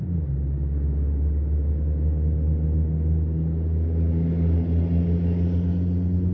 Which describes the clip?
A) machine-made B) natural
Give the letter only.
B